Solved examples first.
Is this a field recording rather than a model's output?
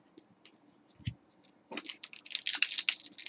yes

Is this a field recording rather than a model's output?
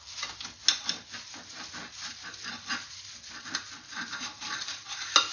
yes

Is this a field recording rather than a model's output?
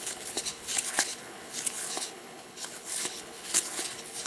no